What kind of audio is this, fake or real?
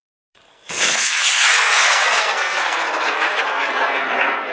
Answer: fake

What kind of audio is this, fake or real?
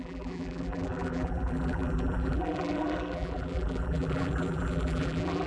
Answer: fake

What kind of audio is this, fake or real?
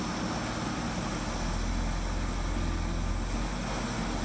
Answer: real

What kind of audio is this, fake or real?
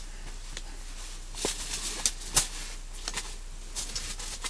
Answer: real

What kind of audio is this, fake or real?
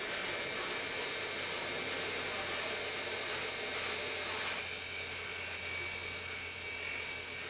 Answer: real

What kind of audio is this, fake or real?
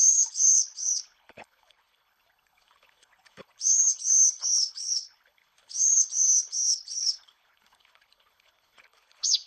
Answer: fake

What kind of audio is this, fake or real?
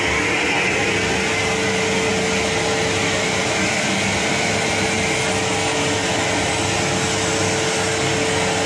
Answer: real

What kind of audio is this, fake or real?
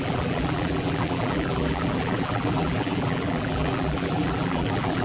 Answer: fake